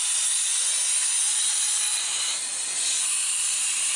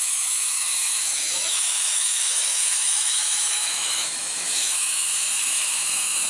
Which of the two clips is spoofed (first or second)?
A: second